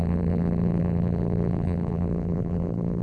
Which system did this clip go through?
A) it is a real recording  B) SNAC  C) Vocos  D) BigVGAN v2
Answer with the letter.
D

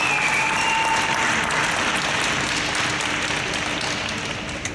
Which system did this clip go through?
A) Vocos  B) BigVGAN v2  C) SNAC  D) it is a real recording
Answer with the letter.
D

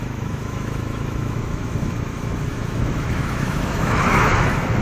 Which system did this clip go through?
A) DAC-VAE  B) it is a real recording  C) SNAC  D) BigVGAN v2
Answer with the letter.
A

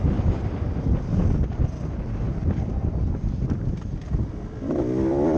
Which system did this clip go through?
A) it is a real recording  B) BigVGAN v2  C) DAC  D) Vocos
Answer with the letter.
A